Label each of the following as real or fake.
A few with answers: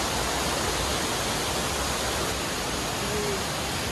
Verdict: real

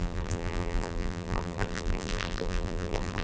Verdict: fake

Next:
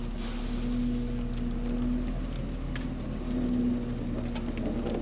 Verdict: real